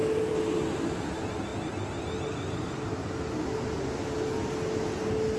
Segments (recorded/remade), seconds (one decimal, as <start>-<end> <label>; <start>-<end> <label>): 0.0-5.4 recorded